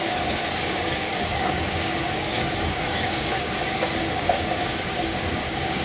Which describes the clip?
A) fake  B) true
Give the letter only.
A